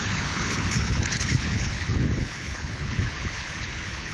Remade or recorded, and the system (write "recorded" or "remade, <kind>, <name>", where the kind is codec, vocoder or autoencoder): remade, codec, HILCodec